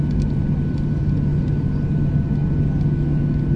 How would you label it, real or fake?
real